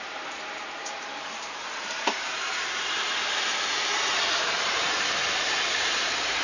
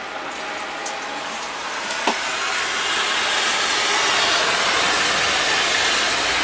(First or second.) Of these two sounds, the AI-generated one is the first